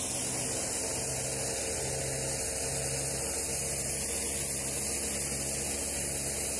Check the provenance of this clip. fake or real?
real